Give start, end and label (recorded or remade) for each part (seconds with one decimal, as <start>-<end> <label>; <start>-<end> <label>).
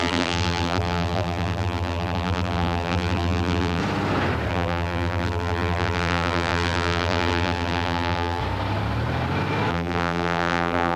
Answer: 0.0-3.8 remade; 3.8-4.5 recorded; 4.5-8.4 remade; 8.4-9.7 recorded; 9.7-11.0 remade